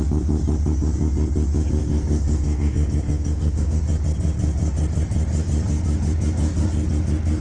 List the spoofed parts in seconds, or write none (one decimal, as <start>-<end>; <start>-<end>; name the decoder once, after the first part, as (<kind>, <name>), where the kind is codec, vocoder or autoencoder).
1.8-3.8 (codec, SNAC)

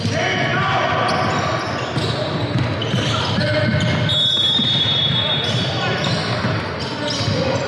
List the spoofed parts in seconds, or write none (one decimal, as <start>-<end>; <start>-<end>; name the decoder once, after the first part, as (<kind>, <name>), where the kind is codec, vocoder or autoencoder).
none

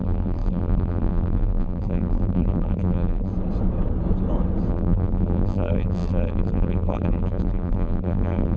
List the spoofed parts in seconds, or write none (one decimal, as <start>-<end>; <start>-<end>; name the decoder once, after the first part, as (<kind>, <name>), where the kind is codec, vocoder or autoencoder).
0.0-3.3 (vocoder, BigVGAN v2); 4.7-8.6

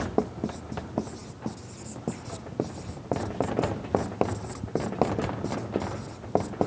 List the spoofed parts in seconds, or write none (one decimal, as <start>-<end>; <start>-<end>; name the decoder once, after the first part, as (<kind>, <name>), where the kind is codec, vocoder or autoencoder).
none

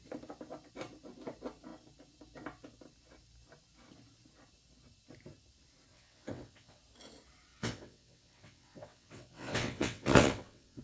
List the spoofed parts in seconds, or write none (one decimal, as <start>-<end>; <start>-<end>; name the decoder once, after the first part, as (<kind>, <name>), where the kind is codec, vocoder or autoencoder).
5.9-6.8 (vocoder, WaveNeXt); 7.5-10.8